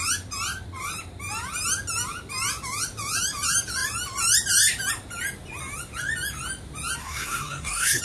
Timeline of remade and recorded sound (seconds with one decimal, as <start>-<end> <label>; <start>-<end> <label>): 0.0-7.0 recorded; 7.0-8.0 remade